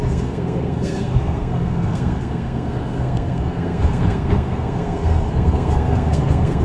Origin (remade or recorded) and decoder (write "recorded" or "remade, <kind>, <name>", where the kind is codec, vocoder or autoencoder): remade, codec, SNAC